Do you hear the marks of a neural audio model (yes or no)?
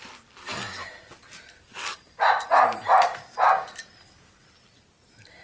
no